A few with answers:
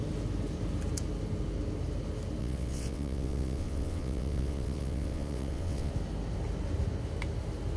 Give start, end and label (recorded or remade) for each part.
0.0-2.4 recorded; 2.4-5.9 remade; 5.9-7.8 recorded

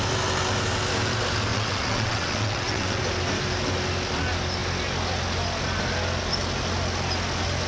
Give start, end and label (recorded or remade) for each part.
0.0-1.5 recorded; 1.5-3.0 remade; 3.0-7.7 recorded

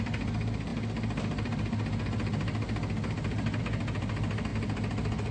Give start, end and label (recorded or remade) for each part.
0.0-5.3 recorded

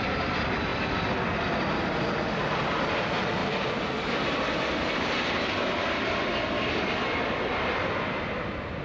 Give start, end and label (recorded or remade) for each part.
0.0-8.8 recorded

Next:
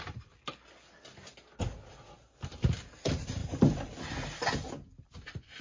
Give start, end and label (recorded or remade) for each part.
0.0-5.6 recorded

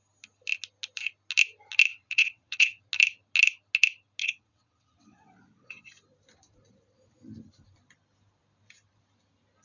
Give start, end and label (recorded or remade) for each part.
0.0-1.9 recorded; 1.9-2.8 remade; 2.8-4.2 recorded; 4.2-5.9 remade; 5.9-9.6 recorded

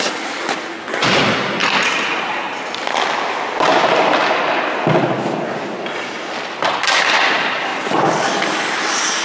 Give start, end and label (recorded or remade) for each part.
0.0-9.2 recorded